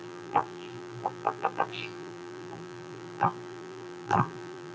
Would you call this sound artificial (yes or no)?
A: yes